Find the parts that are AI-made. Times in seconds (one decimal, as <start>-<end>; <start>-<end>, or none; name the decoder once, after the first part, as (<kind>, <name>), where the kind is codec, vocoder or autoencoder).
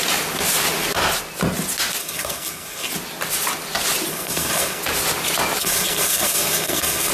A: 2.0-2.9 (codec, SNAC); 4.1-4.8; 5.6-7.1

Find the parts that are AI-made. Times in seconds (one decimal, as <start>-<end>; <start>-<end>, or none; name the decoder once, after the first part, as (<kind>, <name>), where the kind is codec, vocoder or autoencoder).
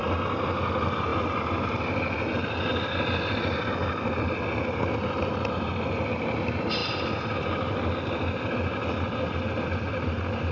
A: none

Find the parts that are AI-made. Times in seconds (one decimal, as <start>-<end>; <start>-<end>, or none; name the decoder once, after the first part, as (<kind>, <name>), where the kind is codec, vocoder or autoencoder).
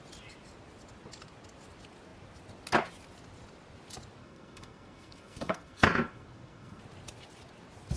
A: 4.2-6.8 (codec, SNAC)